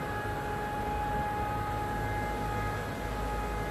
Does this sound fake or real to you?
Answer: real